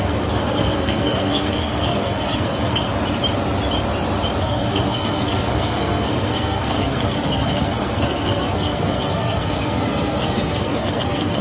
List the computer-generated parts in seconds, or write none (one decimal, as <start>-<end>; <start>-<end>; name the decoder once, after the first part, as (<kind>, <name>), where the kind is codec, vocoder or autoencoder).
0.0-2.9 (codec, SNAC); 4.4-11.4